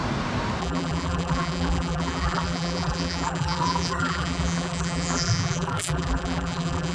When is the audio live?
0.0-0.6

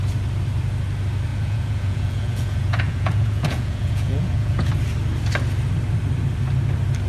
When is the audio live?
0.0-1.3; 4.7-7.1

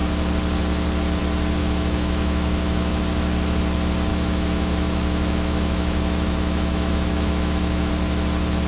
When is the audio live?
0.0-1.6; 3.0-4.1; 7.9-8.7

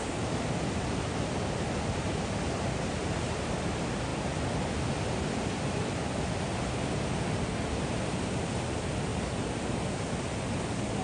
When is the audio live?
0.0-11.0

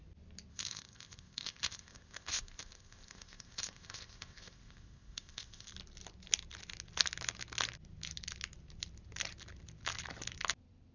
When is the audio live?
0.0-0.5; 5.7-10.9

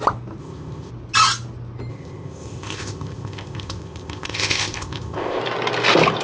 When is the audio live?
0.0-0.4; 0.9-1.9; 5.4-6.2

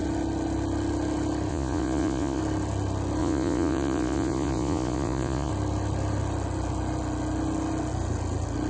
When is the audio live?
0.0-1.5; 2.4-3.2; 5.5-8.7

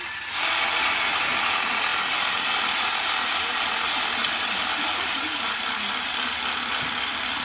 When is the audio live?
0.0-1.9; 5.6-7.4